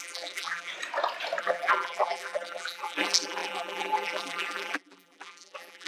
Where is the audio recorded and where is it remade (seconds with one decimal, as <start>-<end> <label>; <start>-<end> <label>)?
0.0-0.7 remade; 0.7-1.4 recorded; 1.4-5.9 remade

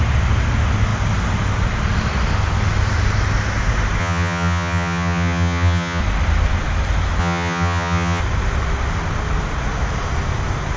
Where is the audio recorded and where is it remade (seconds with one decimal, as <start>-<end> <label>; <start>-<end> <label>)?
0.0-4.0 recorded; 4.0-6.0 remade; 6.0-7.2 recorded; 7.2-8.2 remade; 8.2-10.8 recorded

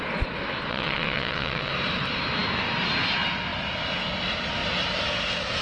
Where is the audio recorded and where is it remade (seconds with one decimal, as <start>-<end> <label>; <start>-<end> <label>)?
0.0-0.7 recorded; 0.7-1.7 remade; 1.7-5.6 recorded

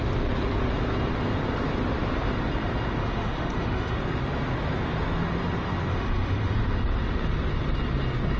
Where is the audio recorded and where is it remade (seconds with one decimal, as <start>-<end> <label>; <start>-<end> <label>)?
0.0-3.0 recorded; 3.0-4.0 remade; 4.0-5.9 recorded; 5.9-6.6 remade; 6.6-8.4 recorded

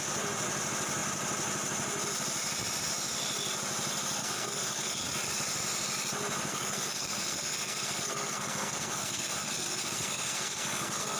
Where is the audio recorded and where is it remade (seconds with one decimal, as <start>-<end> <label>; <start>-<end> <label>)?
0.0-4.2 recorded; 4.2-5.0 remade; 5.0-6.5 recorded; 6.5-11.2 remade

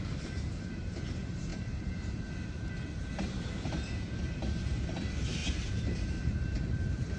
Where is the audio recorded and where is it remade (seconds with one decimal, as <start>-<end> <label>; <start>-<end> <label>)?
0.0-7.2 remade

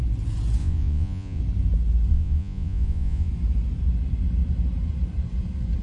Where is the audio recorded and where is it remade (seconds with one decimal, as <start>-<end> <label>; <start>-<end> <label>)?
0.0-0.6 recorded; 0.6-1.4 remade; 1.4-2.1 recorded; 2.1-3.3 remade; 3.3-5.8 recorded

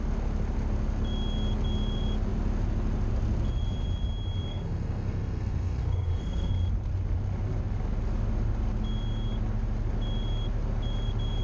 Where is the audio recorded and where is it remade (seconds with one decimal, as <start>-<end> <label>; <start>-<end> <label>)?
0.0-4.5 recorded; 4.5-6.5 remade; 6.5-11.4 recorded